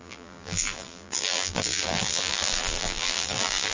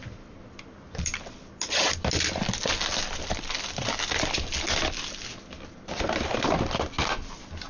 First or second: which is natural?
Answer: second